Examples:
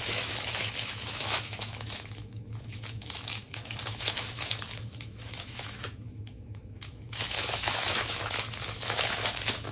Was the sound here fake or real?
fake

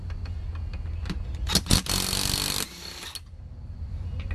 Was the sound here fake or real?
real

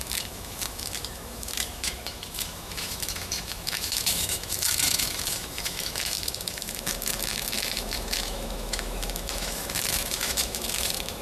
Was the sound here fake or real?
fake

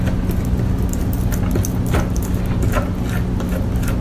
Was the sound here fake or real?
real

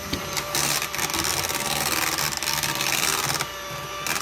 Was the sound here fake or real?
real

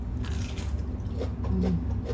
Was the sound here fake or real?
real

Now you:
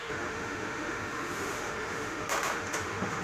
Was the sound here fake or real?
fake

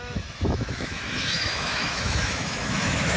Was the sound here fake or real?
fake